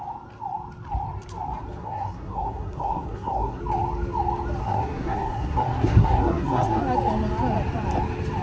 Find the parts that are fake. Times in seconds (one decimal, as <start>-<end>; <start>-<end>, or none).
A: 1.8-3.6; 4.6-6.8